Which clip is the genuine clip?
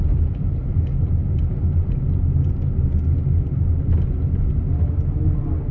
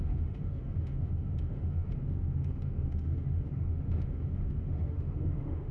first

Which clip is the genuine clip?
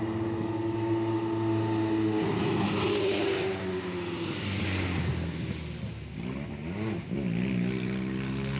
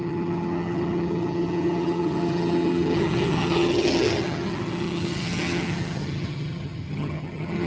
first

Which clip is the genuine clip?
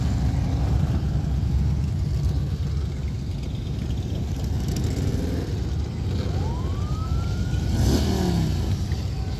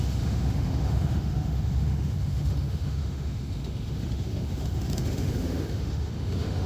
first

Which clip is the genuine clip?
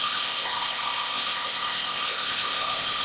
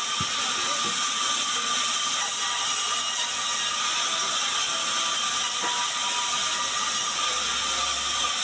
second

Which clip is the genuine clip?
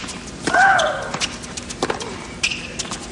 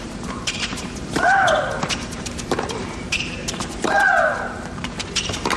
first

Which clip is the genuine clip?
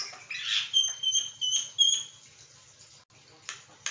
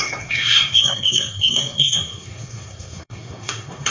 first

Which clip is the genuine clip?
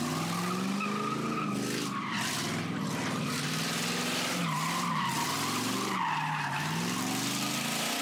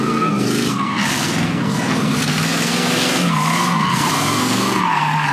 first